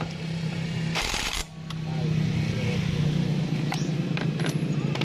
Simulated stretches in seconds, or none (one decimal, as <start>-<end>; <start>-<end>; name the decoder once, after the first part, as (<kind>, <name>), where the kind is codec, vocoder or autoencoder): 0.0-1.4 (vocoder, BigVGAN v2); 4.4-5.0